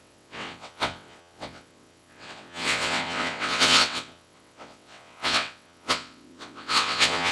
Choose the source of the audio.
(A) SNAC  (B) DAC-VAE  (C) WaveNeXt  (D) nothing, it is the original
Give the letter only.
C